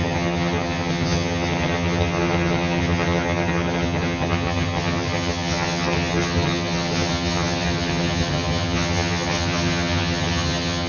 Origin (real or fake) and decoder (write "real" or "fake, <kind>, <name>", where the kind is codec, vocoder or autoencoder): fake, vocoder, HiFi-GAN